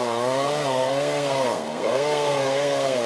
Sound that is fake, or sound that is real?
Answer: fake